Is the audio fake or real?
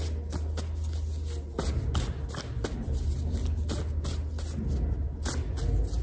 real